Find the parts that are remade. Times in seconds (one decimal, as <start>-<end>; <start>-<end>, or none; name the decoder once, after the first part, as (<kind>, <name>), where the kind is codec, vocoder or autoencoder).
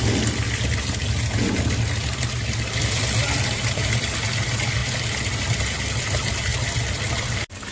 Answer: none